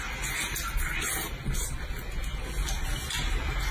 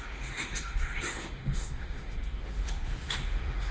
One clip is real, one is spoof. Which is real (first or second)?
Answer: first